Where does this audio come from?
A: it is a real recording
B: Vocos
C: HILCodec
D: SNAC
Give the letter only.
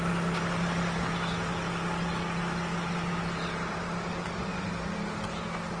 A